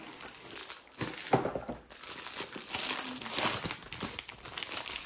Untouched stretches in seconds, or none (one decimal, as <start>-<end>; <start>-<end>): 0.0-5.1